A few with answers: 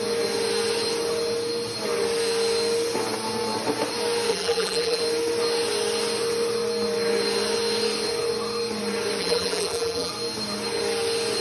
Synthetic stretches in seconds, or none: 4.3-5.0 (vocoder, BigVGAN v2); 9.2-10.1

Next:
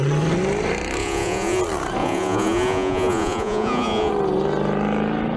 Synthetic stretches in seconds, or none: 1.0-1.6 (vocoder, Vocos); 2.0-4.1

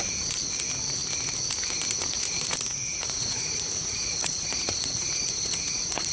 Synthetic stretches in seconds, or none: 2.9-6.1 (vocoder, Vocos)

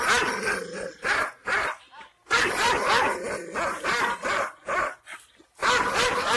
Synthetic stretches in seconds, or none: none